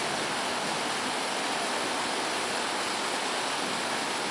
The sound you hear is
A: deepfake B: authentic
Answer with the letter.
B